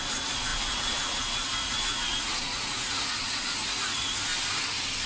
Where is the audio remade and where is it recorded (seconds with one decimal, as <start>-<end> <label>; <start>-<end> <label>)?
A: 0.0-4.3 remade; 4.3-5.1 recorded